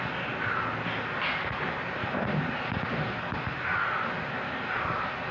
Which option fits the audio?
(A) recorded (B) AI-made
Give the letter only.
A